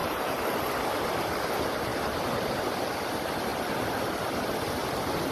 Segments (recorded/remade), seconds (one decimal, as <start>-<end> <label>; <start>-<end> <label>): 0.0-0.7 remade; 0.7-5.3 recorded